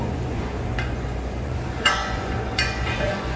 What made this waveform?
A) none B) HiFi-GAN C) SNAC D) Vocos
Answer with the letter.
D